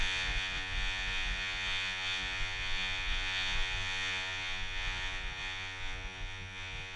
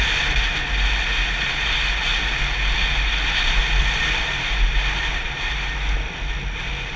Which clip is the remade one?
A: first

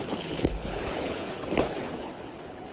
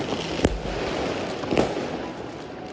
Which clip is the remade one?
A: first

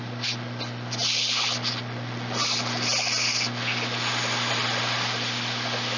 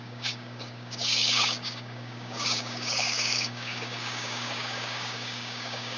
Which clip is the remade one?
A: second